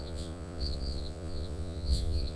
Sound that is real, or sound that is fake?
fake